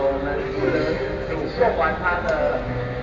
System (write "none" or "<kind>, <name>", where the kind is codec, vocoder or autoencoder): none